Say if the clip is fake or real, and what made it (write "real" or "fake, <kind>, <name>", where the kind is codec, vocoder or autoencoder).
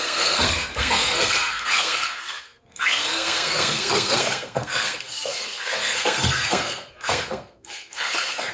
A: fake, codec, SNAC